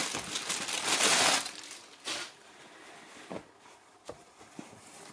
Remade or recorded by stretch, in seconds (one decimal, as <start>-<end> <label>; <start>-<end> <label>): 0.0-5.1 recorded